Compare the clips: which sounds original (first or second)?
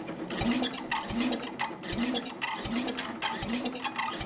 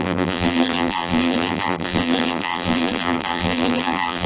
first